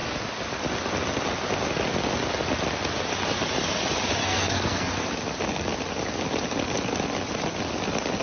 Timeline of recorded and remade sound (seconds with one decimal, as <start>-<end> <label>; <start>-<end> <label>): 0.0-4.2 recorded; 4.2-4.9 remade; 4.9-8.2 recorded